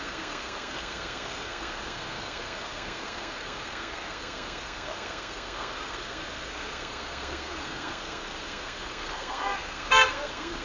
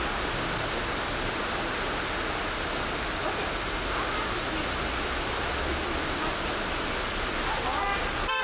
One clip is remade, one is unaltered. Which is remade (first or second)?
first